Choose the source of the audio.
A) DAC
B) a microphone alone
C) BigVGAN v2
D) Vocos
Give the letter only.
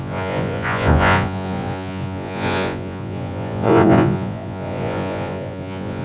D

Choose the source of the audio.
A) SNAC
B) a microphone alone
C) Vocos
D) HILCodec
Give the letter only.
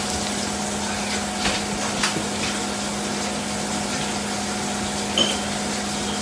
B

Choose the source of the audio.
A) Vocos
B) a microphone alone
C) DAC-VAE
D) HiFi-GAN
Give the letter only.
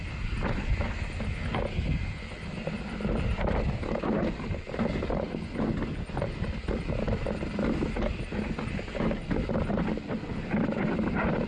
B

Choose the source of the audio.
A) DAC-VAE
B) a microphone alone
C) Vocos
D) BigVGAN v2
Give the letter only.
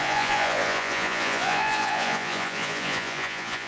C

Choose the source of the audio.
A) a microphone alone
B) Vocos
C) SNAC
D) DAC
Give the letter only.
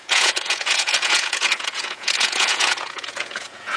B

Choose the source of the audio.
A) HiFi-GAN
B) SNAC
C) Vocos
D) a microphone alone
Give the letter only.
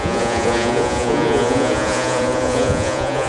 C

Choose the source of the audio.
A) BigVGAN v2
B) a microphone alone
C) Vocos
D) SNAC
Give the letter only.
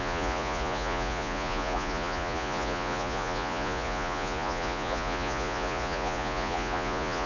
C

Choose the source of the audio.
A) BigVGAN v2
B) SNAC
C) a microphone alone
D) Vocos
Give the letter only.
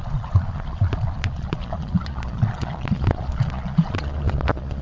D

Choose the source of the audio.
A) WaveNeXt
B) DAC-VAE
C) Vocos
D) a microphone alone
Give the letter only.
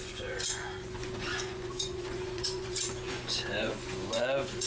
C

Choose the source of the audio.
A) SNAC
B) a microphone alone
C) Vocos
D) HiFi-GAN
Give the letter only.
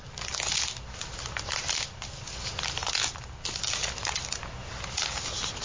B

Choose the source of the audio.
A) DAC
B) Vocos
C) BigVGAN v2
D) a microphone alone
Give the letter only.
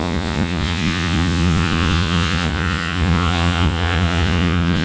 B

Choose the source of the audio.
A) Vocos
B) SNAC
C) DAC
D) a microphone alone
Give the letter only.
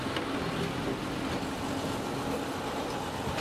D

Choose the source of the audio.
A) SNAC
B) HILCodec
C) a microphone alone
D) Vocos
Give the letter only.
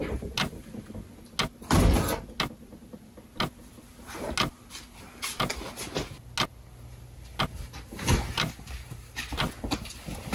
C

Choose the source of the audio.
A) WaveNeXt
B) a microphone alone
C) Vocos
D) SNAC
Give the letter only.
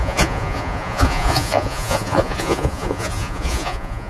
C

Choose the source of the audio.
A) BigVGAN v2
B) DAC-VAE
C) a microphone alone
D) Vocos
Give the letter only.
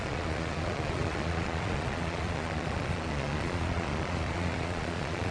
D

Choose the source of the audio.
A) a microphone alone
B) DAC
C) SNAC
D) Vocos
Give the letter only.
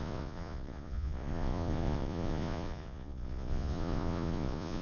D